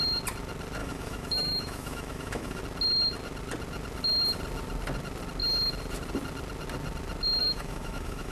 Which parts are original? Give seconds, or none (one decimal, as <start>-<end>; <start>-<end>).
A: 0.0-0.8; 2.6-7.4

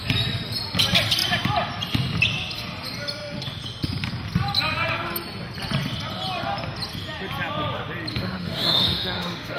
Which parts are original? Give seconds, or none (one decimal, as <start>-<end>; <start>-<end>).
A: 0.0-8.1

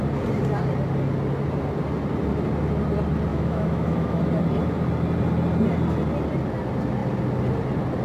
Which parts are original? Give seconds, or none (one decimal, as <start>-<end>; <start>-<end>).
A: 0.0-3.3; 4.2-8.0

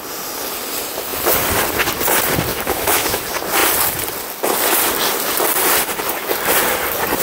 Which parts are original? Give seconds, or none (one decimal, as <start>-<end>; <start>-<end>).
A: 0.0-2.5; 3.2-7.2

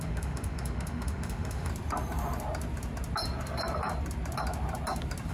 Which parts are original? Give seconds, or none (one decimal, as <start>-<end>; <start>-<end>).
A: 1.7-5.3